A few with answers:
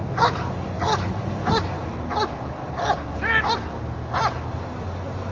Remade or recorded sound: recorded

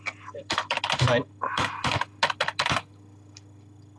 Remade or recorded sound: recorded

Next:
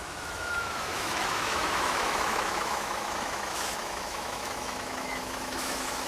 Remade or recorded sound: remade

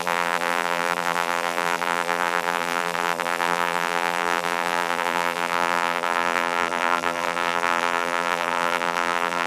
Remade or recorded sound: remade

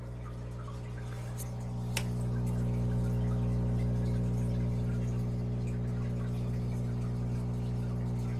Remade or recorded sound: recorded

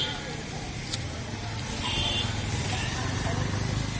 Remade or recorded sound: recorded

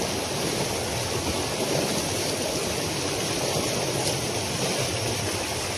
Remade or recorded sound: recorded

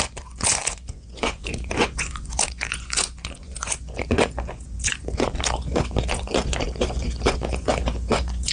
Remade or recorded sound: remade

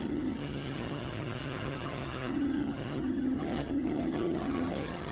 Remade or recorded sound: remade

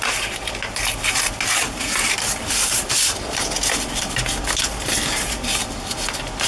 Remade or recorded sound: recorded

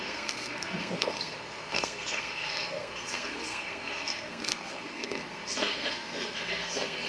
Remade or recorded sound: remade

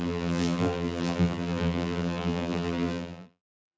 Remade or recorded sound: remade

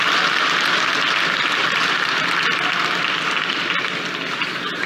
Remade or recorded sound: recorded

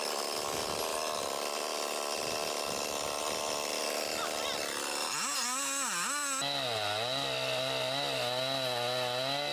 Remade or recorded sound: recorded